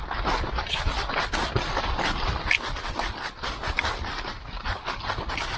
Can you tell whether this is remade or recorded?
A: recorded